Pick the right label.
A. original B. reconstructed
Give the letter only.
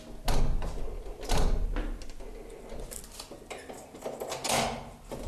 A